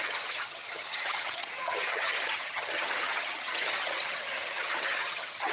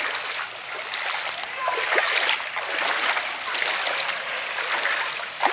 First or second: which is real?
second